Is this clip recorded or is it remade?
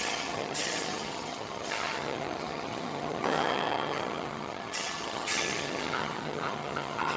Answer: remade